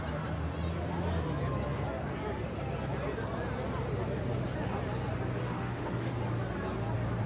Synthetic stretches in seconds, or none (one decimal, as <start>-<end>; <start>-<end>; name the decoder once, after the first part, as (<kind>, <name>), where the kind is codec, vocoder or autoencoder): 5.4-6.1 (autoencoder, DAC-VAE)